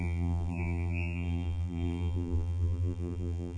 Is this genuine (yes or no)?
no